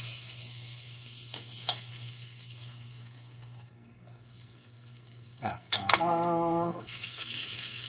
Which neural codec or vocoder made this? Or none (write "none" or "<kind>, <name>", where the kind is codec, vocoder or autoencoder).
codec, SNAC